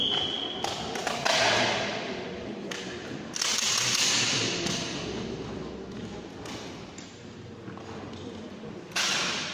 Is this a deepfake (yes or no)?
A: no